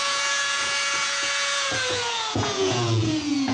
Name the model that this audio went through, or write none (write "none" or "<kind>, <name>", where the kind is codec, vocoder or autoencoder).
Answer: vocoder, Vocos